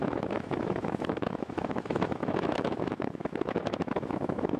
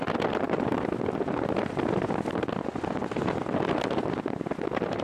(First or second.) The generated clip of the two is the first